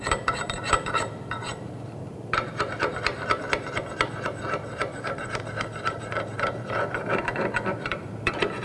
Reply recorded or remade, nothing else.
remade